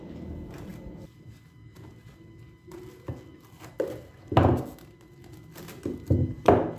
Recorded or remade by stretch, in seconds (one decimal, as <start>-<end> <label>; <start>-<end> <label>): 0.0-6.8 recorded

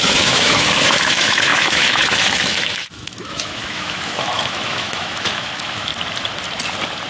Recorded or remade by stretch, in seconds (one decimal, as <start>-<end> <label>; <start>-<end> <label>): 0.0-5.9 remade; 5.9-7.1 recorded

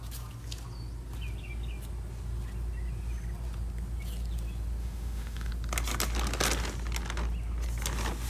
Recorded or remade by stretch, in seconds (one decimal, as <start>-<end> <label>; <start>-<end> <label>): 0.0-4.8 recorded; 4.8-5.5 remade; 5.5-8.3 recorded